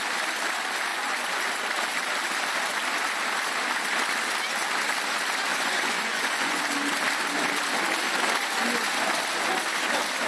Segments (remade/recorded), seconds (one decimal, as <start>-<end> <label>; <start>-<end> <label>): 0.0-0.9 recorded; 0.9-1.4 remade; 1.4-5.5 recorded; 5.5-6.6 remade; 6.6-10.3 recorded